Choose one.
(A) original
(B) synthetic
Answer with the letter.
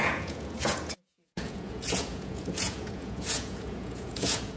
B